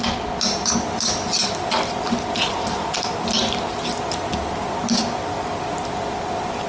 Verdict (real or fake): real